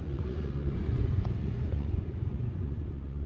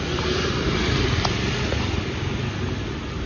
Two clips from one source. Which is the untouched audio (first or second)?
second